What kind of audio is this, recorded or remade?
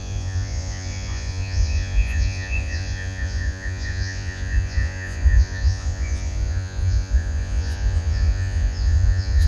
remade